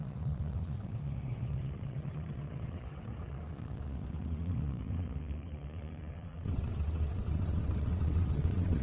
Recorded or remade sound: remade